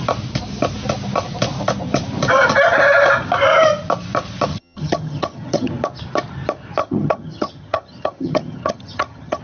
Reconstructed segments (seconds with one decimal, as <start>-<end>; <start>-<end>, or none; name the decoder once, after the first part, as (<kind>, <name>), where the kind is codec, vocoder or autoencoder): 4.5-5.7 (vocoder, HiFi-GAN); 6.8-9.4